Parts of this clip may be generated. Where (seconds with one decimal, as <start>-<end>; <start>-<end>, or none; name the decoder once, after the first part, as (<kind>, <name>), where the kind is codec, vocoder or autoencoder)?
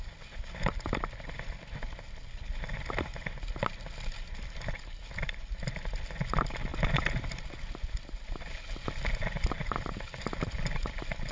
none